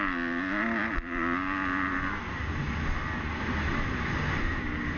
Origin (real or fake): real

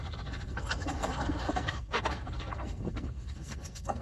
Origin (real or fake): fake